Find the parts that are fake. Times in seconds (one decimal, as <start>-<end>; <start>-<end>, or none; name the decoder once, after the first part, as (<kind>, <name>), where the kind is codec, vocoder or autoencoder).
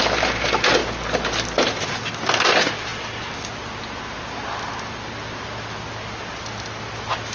none